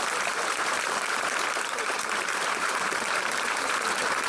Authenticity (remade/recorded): remade